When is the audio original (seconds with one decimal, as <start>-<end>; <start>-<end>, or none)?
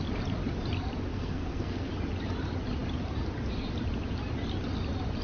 0.0-1.1; 1.9-5.2